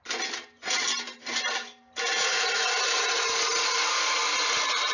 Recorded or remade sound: recorded